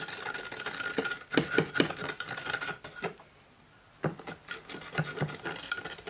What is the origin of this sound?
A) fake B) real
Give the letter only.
B